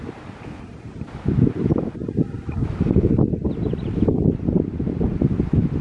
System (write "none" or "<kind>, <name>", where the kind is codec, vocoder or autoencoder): none